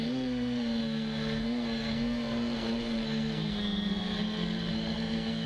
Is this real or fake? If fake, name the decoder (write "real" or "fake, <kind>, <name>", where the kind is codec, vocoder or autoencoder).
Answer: fake, codec, SNAC